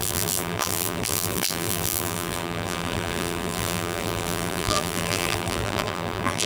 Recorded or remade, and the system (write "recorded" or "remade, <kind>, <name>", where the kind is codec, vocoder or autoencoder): remade, vocoder, BigVGAN v2